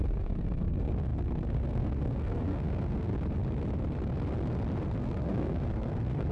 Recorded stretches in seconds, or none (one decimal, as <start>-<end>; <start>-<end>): 3.1-5.0